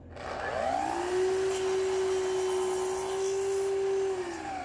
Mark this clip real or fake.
real